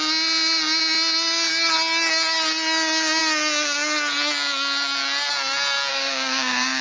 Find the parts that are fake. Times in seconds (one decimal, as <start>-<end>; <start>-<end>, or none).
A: 5.9-6.8